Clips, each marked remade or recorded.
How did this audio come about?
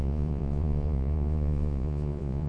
remade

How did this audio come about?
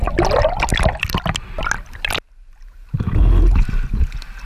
recorded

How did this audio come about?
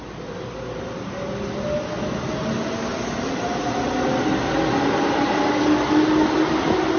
recorded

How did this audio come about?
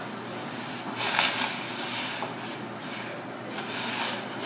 recorded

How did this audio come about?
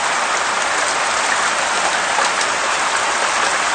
recorded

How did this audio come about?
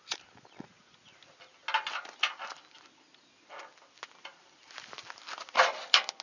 recorded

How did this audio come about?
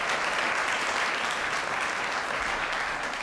recorded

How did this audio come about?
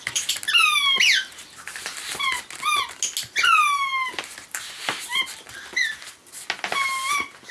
recorded